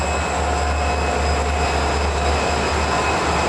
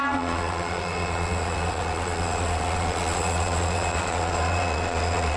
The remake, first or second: second